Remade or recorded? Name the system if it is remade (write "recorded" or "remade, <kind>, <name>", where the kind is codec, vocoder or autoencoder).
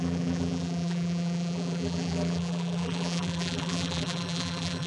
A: remade, vocoder, BigVGAN v2